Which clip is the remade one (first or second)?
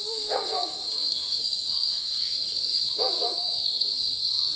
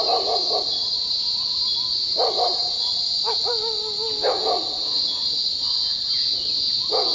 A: first